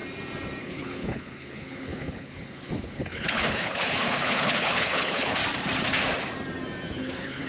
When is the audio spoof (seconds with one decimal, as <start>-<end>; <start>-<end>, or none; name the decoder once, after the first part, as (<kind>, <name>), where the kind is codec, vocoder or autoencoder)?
0.6-5.4 (codec, HILCodec); 6.9-7.5